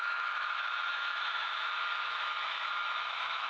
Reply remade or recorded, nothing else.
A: remade